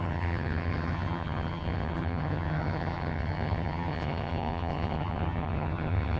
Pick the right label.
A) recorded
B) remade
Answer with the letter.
B